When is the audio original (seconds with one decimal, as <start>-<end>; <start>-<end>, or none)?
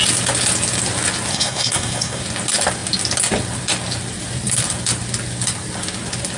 0.0-1.3; 2.2-6.4